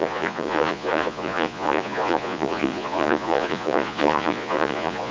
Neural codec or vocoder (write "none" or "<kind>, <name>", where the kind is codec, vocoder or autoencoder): vocoder, Vocos